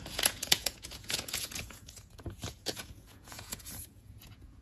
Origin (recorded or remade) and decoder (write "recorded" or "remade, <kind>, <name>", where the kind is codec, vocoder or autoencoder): remade, vocoder, Vocos